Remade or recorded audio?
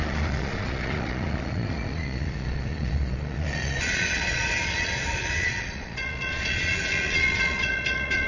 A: remade